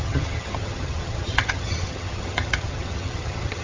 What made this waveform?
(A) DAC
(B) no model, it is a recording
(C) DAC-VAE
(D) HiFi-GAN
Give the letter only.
D